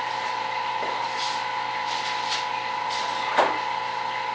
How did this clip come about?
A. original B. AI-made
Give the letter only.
A